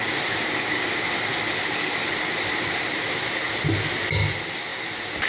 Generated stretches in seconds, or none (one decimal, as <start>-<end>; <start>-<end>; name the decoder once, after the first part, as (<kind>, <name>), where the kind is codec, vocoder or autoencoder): none